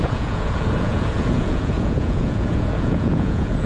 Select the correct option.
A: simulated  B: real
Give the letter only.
A